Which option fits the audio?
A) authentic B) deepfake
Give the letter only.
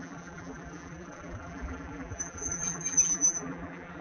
B